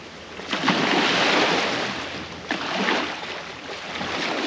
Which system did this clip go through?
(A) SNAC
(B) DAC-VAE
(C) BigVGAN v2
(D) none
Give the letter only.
D